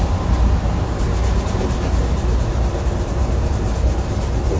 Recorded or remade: recorded